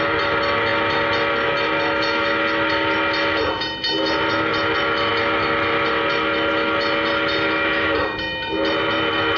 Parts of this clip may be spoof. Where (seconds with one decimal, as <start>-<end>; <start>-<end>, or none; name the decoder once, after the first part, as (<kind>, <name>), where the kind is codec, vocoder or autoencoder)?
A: none

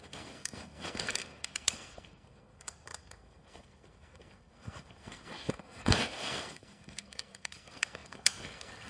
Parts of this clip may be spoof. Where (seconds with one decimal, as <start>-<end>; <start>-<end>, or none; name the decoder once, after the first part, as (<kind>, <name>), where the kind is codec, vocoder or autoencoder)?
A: 0.0-8.9 (codec, SNAC)

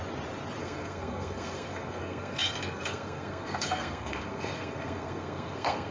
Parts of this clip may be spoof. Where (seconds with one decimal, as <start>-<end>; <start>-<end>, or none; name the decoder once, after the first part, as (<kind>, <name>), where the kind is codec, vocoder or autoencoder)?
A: 0.6-5.9 (codec, SNAC)